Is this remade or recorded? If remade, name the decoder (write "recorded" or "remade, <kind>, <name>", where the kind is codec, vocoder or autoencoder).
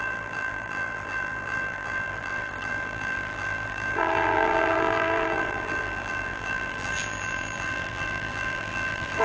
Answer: remade, vocoder, BigVGAN v2